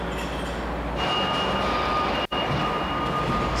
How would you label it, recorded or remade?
recorded